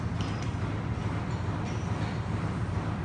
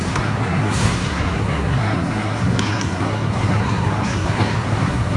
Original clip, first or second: first